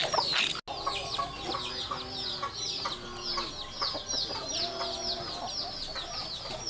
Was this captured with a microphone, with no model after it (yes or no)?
yes